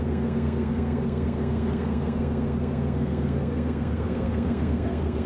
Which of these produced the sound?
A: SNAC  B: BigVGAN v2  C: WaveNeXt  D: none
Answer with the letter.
A